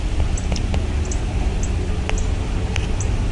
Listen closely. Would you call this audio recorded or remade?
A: recorded